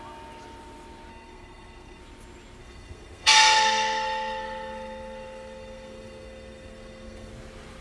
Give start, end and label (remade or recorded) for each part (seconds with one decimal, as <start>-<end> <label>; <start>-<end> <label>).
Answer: 0.0-1.1 recorded; 1.1-2.0 remade; 2.0-2.6 recorded; 2.6-7.3 remade; 7.3-7.8 recorded